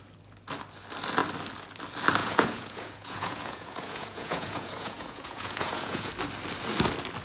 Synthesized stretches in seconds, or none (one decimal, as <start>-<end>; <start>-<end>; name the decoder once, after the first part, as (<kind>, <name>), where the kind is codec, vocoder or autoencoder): 2.2-6.1 (vocoder, Vocos)